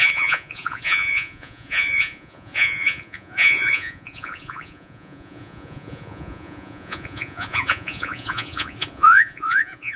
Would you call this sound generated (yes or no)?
yes